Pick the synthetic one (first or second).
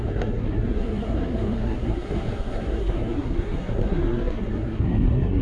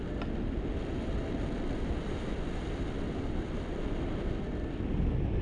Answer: first